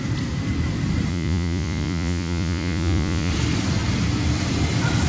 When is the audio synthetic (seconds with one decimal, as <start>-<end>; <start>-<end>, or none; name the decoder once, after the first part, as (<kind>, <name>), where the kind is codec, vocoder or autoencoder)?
1.1-3.3 (vocoder, Vocos)